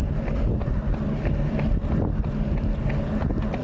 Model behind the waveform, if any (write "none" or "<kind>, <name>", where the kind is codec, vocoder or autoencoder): none